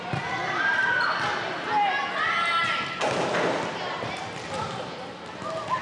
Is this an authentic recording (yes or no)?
yes